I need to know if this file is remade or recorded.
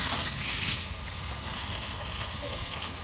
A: remade